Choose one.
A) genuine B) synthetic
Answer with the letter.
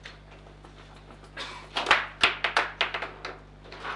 A